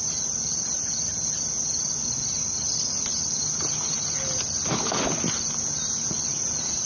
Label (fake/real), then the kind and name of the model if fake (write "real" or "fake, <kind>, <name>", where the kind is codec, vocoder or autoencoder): real